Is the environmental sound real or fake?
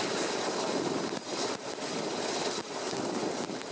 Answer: real